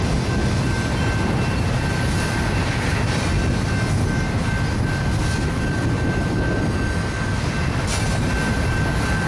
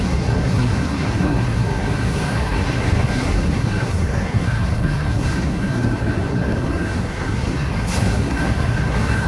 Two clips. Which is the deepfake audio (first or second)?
second